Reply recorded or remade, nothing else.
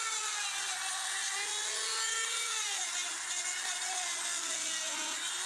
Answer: recorded